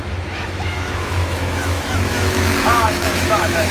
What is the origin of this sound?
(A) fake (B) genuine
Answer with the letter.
A